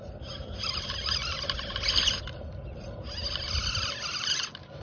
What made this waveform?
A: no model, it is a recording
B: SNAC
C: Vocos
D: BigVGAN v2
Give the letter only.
A